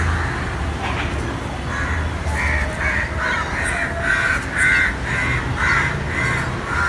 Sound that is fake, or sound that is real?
real